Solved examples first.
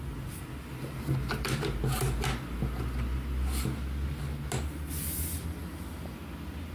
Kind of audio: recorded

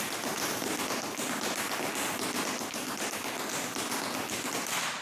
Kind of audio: recorded